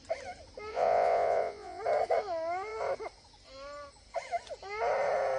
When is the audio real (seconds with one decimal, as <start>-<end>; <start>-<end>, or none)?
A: 0.0-0.7; 1.8-5.4